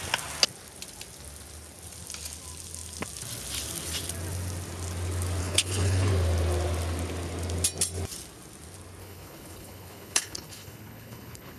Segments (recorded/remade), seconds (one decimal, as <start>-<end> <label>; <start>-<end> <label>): 0.0-5.4 recorded; 5.4-6.1 remade; 6.1-9.0 recorded; 9.0-11.6 remade